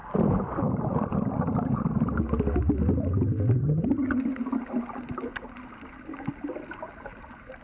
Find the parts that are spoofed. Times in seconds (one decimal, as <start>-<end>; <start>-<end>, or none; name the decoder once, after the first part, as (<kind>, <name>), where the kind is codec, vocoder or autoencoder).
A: 3.6-4.2 (vocoder, HiFi-GAN)